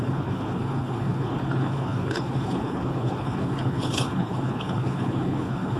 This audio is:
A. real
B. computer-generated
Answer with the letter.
B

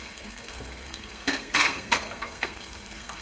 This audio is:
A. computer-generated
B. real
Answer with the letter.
A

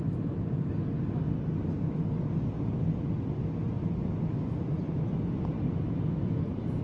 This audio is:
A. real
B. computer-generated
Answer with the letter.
A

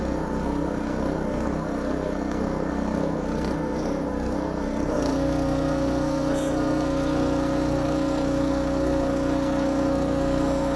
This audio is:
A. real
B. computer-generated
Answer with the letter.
B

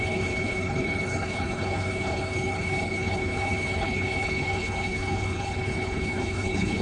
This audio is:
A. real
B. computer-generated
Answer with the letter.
B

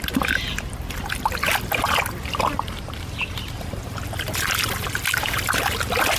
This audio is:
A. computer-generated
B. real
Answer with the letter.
B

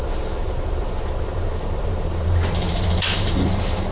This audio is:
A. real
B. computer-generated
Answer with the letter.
B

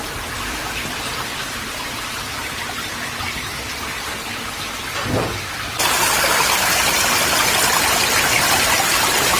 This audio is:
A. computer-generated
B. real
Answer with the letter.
A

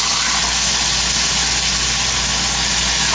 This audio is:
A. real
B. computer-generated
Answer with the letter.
A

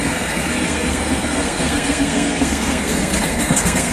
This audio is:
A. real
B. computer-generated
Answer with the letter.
B